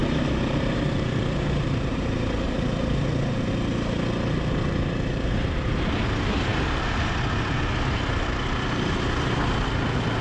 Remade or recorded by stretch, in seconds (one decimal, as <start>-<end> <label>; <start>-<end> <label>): 0.0-3.5 remade; 3.5-10.2 recorded